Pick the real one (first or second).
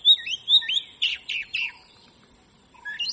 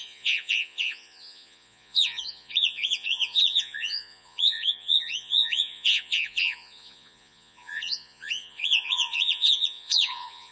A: first